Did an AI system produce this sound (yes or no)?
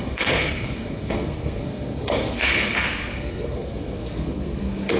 yes